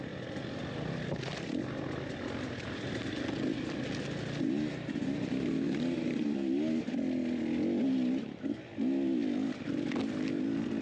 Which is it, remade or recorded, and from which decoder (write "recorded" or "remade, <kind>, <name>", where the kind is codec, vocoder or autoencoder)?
recorded